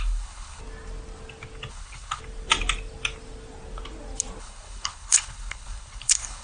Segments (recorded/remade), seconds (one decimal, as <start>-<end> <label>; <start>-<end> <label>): 0.0-0.6 remade; 0.6-1.7 recorded; 1.7-2.2 remade; 2.2-4.4 recorded; 4.4-6.4 remade